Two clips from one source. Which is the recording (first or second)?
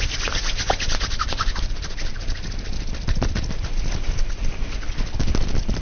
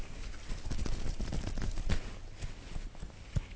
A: second